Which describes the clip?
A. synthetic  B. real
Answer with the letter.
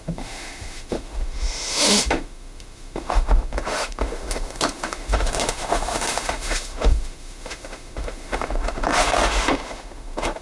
A